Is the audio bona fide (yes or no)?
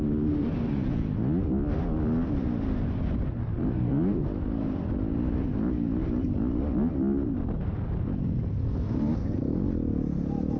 yes